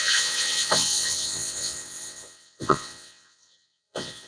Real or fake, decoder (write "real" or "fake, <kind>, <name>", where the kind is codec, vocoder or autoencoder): fake, vocoder, WaveNeXt